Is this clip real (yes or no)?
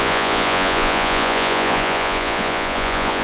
no